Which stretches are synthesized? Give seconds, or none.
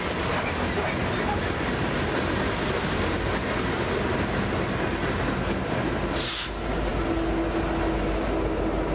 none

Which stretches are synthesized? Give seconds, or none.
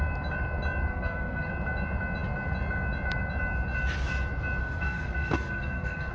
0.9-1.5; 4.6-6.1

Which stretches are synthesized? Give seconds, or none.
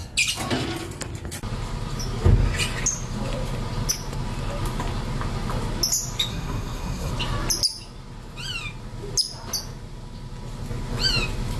6.3-7.1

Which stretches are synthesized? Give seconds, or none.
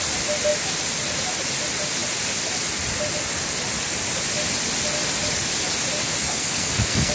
6.2-7.1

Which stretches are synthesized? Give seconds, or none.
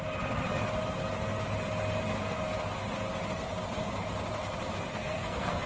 4.9-5.7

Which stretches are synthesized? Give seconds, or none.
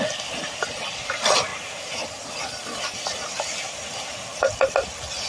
none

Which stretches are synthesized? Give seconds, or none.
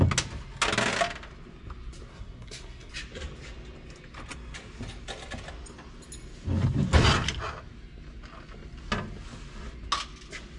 2.1-2.9